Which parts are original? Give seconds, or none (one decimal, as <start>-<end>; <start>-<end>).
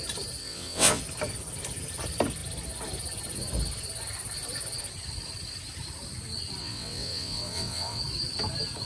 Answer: 0.0-0.4; 1.0-6.6; 8.0-8.9